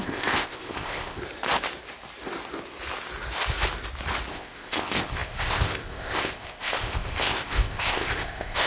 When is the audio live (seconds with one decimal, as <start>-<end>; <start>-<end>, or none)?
1.2-4.3